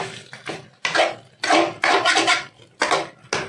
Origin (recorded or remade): recorded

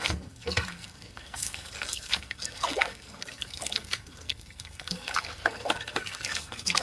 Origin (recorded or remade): remade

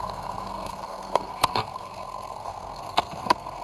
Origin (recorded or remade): remade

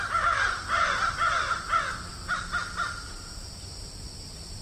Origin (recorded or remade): recorded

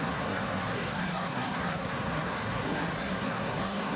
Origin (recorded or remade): remade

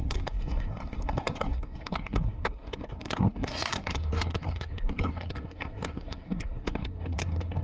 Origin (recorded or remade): remade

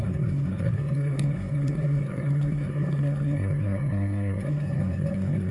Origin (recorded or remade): remade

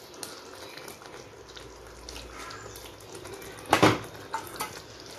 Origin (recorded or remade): recorded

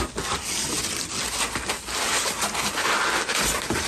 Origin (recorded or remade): recorded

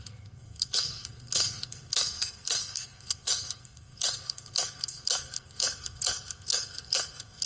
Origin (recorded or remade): remade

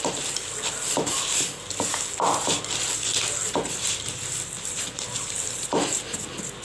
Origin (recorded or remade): recorded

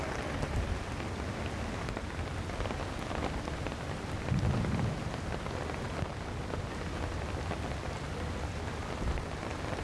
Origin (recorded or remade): recorded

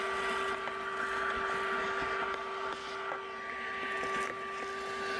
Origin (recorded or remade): recorded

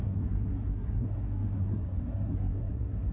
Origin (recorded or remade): remade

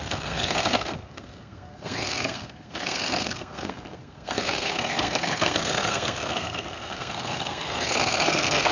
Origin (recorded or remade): remade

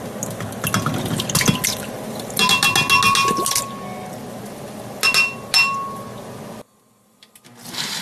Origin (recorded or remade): recorded